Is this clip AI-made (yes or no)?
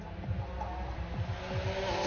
no